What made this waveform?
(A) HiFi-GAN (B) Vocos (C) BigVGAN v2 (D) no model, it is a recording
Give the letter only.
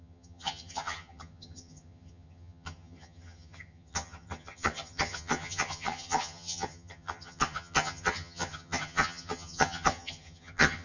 A